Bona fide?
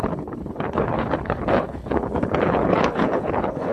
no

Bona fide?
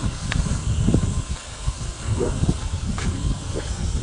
no